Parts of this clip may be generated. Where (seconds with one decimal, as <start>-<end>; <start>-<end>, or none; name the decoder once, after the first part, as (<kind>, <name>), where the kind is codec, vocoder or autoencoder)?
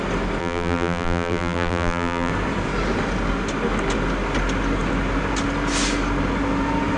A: 0.4-2.3 (vocoder, BigVGAN v2)